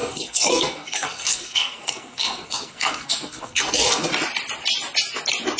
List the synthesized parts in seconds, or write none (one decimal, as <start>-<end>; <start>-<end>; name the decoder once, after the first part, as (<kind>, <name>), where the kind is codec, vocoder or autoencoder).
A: 0.0-4.1 (codec, SNAC)